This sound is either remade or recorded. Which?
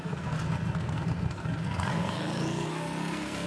remade